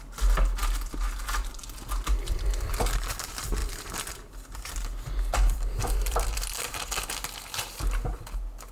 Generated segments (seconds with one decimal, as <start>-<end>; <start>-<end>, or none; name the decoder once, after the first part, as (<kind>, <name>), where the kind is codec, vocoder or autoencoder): none